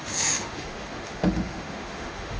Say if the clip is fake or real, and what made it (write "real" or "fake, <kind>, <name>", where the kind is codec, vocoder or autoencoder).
fake, autoencoder, DAC-VAE